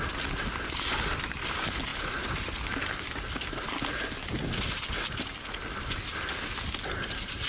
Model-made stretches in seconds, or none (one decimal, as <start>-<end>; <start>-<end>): none